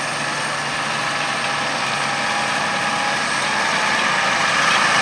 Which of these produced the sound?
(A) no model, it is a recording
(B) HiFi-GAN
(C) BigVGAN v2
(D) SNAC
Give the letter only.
A